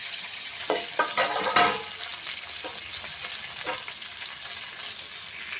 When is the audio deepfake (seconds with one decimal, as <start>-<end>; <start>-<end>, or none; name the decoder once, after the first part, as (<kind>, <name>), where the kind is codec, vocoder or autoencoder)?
0.0-0.6 (vocoder, HiFi-GAN)